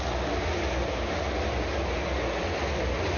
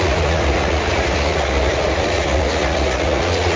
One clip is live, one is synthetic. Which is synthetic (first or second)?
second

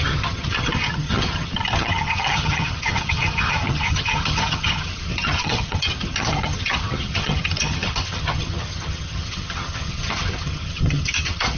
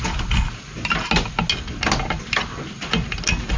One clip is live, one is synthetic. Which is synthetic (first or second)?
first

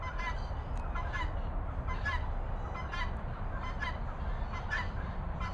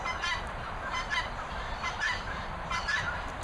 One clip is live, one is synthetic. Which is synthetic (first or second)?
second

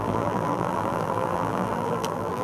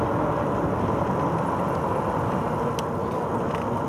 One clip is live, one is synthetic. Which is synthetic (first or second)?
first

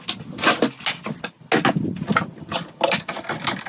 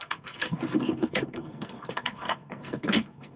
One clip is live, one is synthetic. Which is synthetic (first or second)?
second